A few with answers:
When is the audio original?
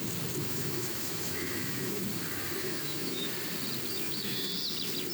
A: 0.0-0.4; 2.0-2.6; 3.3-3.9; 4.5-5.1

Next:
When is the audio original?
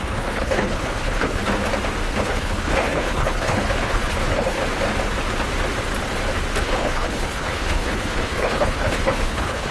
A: 1.4-2.2; 4.6-6.6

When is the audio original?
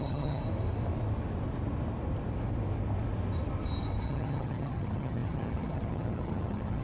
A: 0.4-4.0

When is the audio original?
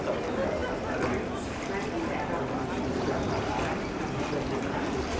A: 0.0-5.2